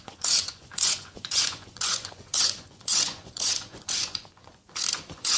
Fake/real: fake